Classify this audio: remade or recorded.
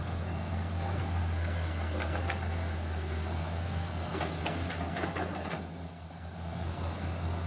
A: remade